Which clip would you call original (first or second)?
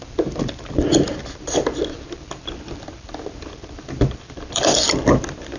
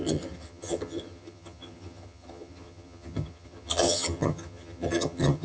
first